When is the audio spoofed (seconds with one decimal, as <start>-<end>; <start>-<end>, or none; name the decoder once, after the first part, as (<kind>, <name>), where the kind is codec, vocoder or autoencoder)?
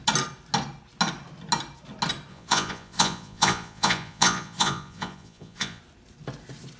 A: 2.3-5.8 (vocoder, Vocos)